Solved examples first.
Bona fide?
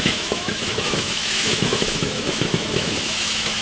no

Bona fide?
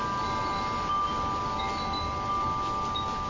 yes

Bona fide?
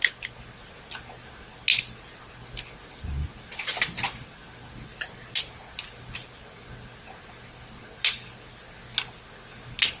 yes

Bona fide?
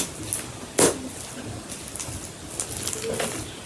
yes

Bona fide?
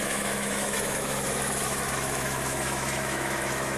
no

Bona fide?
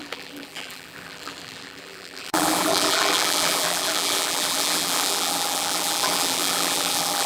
no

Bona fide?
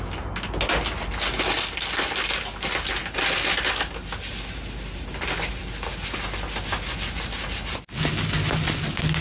yes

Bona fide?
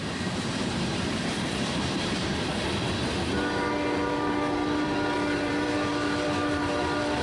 no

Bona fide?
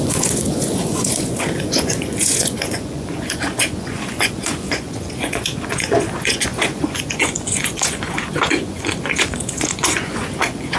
no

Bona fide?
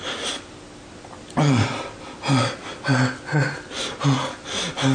yes